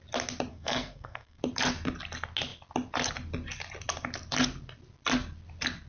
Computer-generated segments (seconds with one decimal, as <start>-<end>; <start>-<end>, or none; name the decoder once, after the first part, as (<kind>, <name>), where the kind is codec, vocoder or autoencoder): 0.5-1.4 (codec, SNAC)